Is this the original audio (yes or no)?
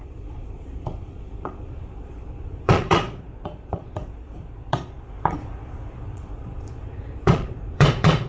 no